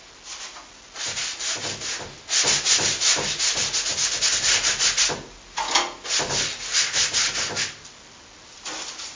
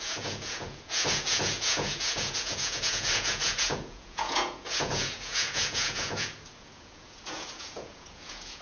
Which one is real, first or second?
first